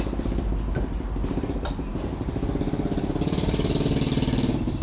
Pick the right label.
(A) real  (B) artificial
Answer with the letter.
A